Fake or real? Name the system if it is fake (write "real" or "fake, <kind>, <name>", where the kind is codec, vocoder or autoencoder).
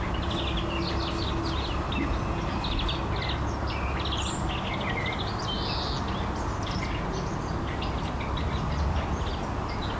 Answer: real